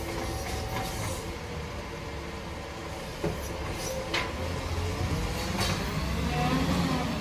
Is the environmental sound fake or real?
real